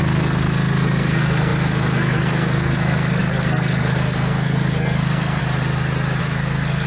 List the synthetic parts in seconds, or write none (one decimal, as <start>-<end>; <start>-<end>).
0.0-5.4; 6.2-6.9